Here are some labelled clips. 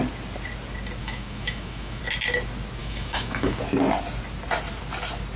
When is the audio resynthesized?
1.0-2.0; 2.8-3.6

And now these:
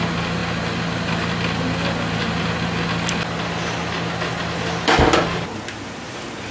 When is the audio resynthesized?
none